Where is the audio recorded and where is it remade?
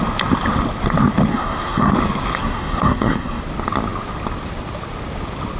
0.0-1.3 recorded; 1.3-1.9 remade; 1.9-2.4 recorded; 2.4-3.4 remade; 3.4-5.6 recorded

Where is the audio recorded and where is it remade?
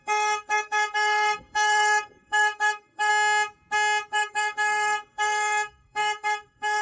0.0-3.1 remade; 3.1-4.1 recorded; 4.1-6.8 remade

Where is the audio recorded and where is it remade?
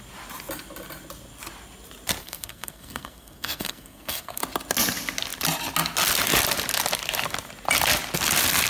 0.0-2.2 recorded; 2.2-4.4 remade; 4.4-8.7 recorded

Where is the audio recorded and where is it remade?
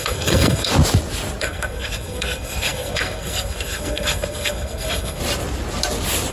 0.0-0.7 remade; 0.7-1.4 recorded; 1.4-5.2 remade; 5.2-6.3 recorded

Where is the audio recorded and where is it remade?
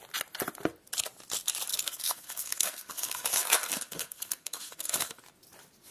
0.0-1.7 recorded; 1.7-5.2 remade; 5.2-5.9 recorded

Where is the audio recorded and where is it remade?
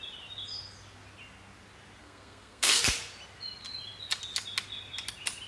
0.0-2.0 recorded; 2.0-2.8 remade; 2.8-5.5 recorded